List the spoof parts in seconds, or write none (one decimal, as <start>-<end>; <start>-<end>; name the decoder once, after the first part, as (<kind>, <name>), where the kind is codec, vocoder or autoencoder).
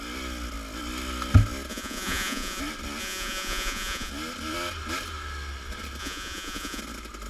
1.7-2.6 (vocoder, Vocos); 3.0-4.1; 6.0-6.8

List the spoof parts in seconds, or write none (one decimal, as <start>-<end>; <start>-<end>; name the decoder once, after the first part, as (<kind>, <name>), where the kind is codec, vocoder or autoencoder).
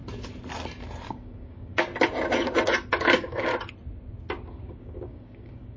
1.1-1.9 (codec, DAC); 2.9-3.5; 4.5-5.8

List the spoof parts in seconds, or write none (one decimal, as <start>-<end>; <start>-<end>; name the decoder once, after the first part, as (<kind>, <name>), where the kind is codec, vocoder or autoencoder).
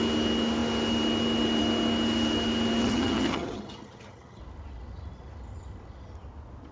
2.8-4.4 (vocoder, HiFi-GAN)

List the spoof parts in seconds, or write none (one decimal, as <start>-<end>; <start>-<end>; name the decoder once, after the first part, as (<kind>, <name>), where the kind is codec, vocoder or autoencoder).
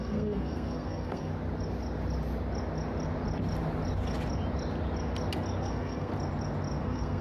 0.0-1.3 (codec, SNAC); 5.6-6.1; 6.8-7.2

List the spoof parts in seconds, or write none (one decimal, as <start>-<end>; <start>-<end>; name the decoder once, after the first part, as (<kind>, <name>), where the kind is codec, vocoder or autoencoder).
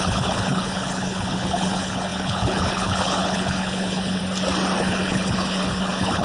0.0-4.2 (codec, HILCodec); 4.8-6.2